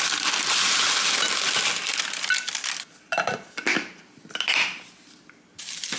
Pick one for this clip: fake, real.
real